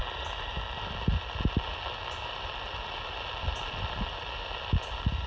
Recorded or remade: recorded